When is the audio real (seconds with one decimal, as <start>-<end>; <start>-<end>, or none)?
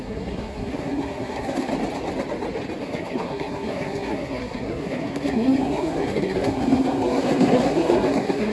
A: 1.7-2.8